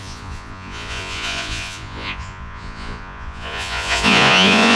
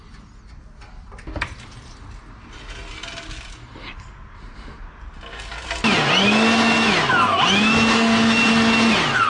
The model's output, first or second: first